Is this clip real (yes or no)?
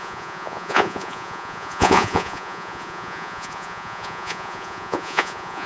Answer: no